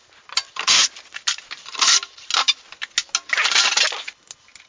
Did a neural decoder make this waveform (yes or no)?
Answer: no